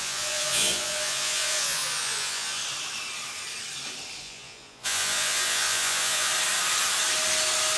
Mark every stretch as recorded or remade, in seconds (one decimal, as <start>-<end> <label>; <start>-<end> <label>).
0.0-2.6 remade; 2.6-4.2 recorded; 4.2-6.3 remade; 6.3-7.8 recorded